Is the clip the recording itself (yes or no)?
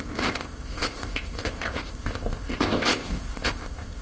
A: no